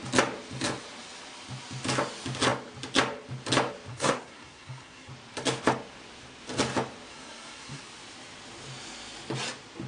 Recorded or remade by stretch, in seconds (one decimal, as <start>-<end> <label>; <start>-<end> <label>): 0.0-3.9 recorded; 3.9-5.1 remade; 5.1-7.1 recorded; 7.1-7.8 remade; 7.8-9.9 recorded